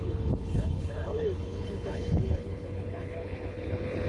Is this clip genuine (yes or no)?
no